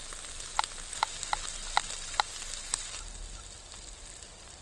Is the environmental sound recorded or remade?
recorded